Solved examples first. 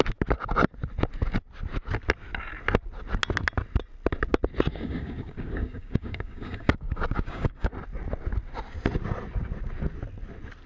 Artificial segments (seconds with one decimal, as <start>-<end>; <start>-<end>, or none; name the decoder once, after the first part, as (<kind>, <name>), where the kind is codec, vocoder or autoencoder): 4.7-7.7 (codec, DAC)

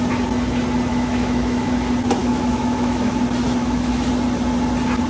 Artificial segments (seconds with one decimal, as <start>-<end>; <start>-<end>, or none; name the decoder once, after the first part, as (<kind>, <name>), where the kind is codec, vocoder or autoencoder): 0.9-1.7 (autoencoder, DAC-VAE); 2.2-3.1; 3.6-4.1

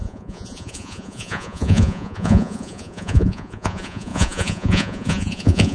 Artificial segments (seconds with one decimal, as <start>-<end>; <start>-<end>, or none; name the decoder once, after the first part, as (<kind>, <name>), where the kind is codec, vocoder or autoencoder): 0.0-5.7 (vocoder, Vocos)

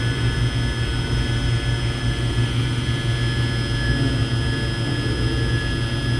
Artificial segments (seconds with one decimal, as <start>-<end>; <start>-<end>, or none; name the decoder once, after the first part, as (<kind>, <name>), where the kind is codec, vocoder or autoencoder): none

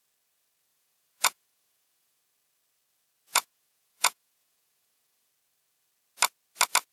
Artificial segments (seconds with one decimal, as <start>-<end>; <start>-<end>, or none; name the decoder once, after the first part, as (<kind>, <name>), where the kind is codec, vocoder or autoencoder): 0.7-2.2 (vocoder, Vocos); 3.3-5.3

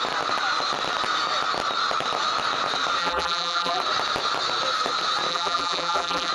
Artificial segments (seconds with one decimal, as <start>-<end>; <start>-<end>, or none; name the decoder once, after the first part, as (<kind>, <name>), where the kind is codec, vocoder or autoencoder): 3.0-3.8 (vocoder, BigVGAN v2); 5.3-6.3